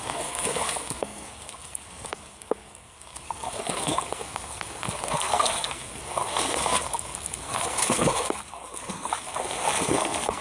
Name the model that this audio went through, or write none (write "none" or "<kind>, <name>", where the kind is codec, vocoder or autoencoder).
codec, SNAC